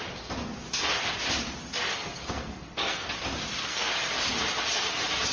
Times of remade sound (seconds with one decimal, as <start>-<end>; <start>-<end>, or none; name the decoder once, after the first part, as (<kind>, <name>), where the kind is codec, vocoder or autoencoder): 1.7-3.1 (codec, SNAC); 3.6-4.3